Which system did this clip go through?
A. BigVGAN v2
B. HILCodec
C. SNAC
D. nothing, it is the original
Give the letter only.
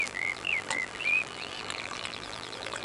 A